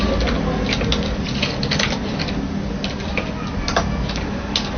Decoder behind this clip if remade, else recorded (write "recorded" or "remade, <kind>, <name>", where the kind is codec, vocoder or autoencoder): recorded